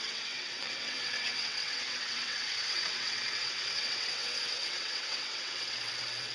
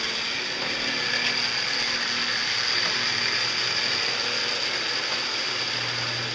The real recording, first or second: second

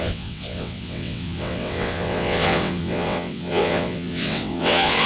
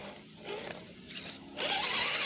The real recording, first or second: second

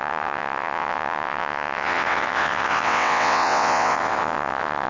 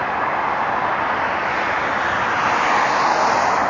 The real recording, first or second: second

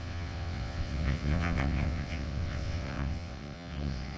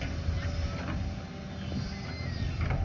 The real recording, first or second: second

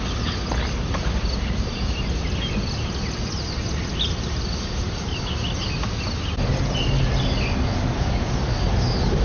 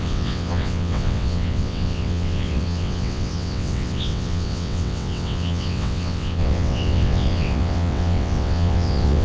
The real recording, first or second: first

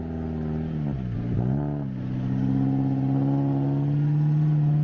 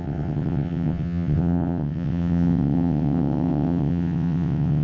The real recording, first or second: first